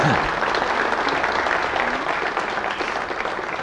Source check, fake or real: real